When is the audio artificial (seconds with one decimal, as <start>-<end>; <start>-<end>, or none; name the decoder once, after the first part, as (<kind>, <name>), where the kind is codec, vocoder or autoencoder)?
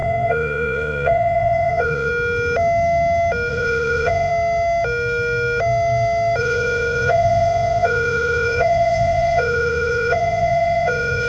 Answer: 0.0-2.1 (vocoder, Vocos); 3.5-4.3; 6.4-11.3